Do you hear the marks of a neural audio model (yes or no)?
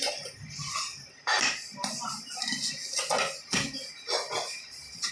no